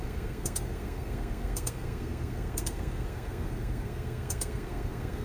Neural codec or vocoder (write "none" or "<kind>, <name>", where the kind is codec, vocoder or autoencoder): codec, SNAC